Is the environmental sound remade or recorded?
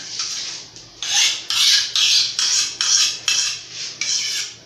recorded